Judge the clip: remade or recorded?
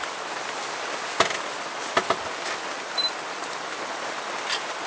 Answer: recorded